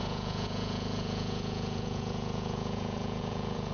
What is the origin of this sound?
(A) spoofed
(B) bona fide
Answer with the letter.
A